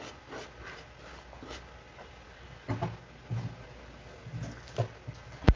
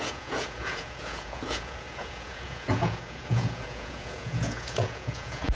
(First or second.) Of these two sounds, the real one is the first